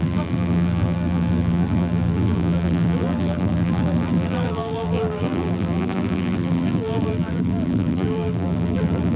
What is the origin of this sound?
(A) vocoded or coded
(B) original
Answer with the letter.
A